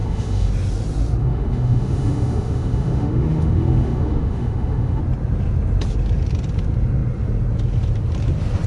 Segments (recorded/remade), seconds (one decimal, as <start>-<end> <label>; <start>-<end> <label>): 0.0-0.5 remade; 0.5-1.2 recorded; 1.2-5.0 remade; 5.0-8.7 recorded